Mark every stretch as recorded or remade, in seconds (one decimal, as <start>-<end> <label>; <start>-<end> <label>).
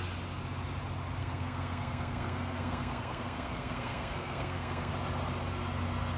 0.0-1.2 recorded; 1.2-4.9 remade; 4.9-6.2 recorded